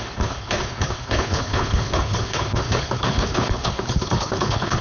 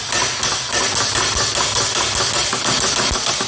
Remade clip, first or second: first